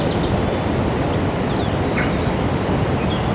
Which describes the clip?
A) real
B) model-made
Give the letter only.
A